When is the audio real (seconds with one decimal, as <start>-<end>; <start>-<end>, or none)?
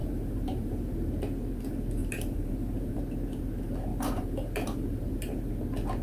1.1-2.0; 3.0-3.9; 5.5-6.0